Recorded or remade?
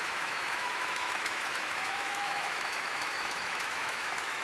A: remade